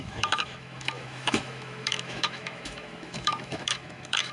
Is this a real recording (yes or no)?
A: no